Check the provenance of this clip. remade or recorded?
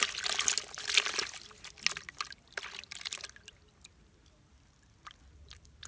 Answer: recorded